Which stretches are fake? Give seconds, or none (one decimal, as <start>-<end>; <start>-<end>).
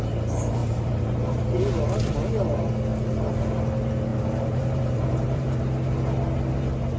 0.6-1.4; 4.1-5.6